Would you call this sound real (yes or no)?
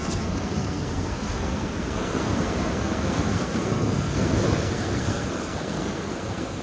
no